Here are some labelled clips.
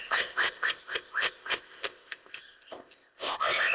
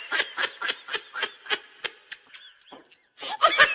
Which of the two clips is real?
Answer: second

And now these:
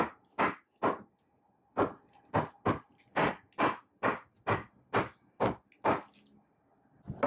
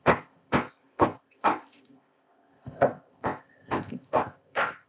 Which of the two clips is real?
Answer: first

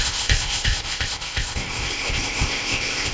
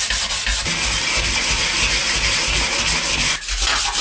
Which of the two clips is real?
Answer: second